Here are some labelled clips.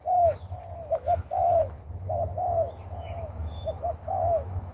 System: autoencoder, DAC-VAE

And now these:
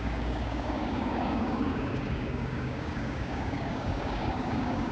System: codec, DAC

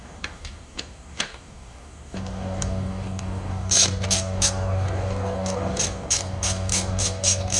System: codec, DAC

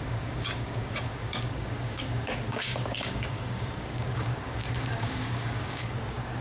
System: codec, DAC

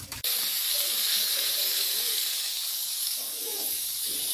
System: codec, DAC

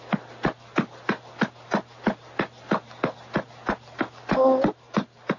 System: none